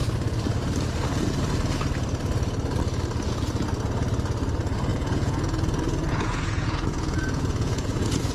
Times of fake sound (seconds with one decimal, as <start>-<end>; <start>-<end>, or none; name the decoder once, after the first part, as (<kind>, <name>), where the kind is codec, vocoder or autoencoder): 4.9-8.3 (vocoder, Vocos)